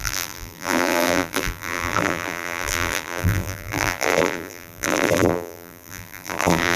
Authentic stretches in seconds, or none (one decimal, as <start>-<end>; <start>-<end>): none